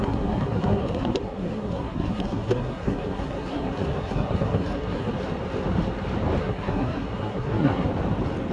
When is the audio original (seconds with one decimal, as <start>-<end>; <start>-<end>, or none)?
5.1-6.4; 7.9-8.5

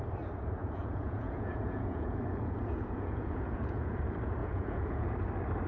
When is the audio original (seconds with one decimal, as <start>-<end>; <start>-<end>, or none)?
0.0-0.6; 4.0-4.4; 5.1-5.7